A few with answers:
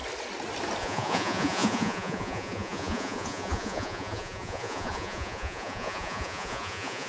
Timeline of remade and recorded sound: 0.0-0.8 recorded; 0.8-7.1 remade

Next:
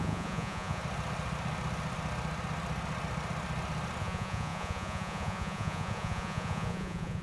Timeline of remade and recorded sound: 0.0-0.8 remade; 0.8-4.0 recorded; 4.0-7.2 remade